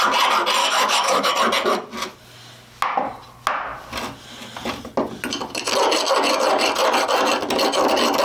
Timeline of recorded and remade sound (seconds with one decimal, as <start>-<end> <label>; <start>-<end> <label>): 0.0-0.6 recorded; 0.6-1.3 remade; 1.3-8.2 recorded